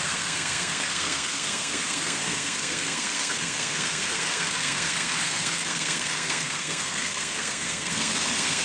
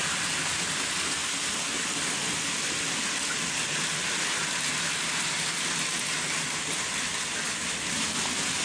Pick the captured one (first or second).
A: second